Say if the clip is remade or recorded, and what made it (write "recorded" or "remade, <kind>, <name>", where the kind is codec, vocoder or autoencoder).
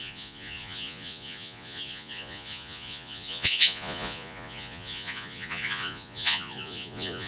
remade, vocoder, Vocos